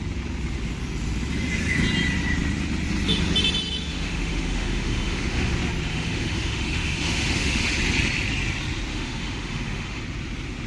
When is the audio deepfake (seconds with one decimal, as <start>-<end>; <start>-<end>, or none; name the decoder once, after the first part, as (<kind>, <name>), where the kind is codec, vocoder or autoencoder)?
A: 3.9-5.5 (autoencoder, DAC-VAE); 5.9-7.8; 8.9-10.0